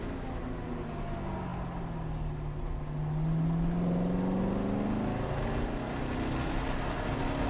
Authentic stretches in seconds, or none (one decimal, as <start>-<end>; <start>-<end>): 0.0-7.5